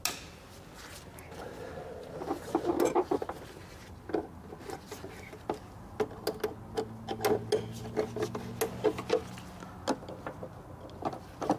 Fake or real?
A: real